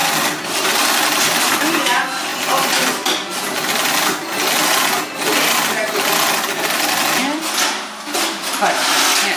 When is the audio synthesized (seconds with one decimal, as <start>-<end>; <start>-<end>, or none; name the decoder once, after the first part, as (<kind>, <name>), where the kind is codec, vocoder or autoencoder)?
none